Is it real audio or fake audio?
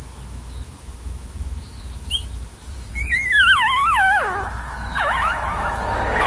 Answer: fake